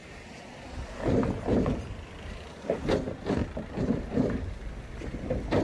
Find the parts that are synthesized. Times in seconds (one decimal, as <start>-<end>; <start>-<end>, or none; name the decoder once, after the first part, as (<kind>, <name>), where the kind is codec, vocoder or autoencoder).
3.4-4.5 (vocoder, BigVGAN v2)